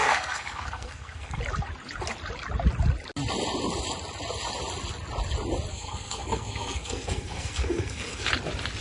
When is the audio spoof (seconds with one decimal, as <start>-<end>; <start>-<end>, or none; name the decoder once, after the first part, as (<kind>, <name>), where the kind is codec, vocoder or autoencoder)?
0.0-1.4 (codec, SNAC); 5.7-8.3

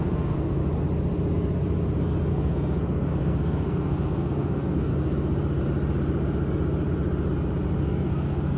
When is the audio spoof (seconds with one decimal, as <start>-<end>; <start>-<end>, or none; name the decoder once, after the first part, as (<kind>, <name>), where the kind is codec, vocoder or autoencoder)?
0.0-0.6 (codec, SNAC); 2.3-4.9; 7.8-8.6